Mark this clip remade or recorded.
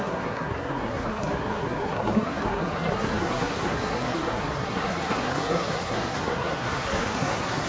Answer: remade